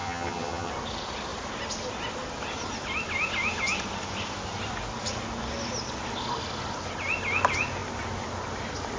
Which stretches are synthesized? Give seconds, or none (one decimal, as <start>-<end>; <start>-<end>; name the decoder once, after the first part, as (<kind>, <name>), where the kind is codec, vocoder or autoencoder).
0.0-0.7 (vocoder, HiFi-GAN)